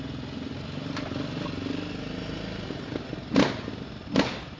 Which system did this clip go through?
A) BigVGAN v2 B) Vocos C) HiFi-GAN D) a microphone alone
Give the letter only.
D